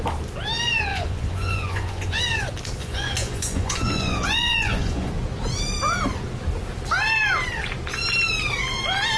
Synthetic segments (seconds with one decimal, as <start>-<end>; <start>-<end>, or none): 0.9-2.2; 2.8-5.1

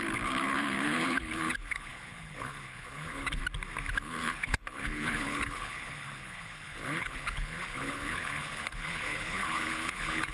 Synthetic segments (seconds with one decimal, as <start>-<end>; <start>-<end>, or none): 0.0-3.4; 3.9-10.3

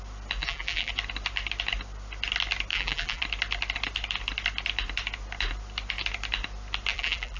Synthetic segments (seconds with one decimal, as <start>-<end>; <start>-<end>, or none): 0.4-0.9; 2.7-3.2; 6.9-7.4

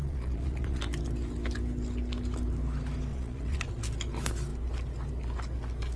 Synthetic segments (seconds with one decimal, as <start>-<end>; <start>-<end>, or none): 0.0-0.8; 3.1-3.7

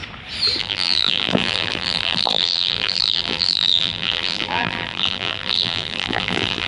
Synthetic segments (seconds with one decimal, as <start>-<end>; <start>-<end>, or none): 0.6-6.7

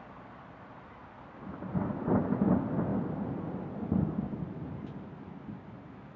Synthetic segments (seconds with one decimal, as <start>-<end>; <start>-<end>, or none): none